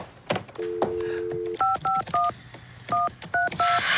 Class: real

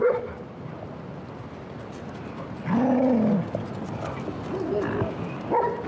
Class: real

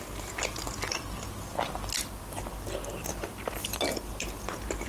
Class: real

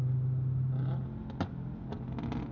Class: real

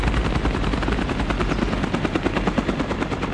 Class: real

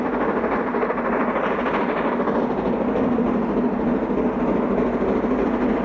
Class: real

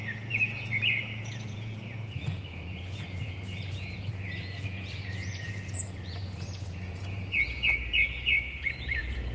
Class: fake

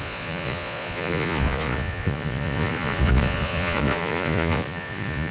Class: fake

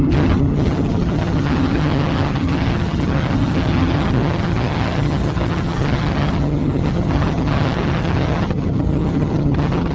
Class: fake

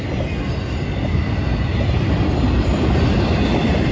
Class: real